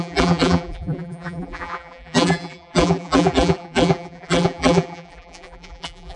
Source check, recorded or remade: remade